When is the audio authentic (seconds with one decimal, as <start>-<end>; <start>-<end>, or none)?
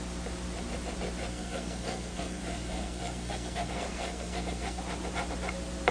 0.0-1.3; 4.8-5.9